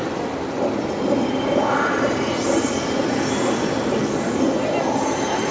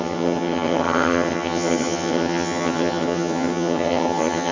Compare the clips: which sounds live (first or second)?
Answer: first